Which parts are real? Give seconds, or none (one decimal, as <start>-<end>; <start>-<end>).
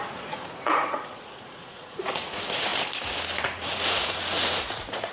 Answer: 2.7-3.4